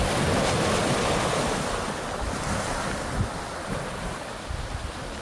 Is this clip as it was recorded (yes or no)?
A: yes